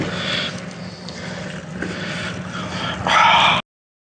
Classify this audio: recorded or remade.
recorded